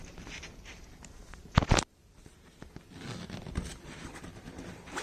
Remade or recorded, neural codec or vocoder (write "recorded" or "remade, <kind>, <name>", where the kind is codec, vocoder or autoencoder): recorded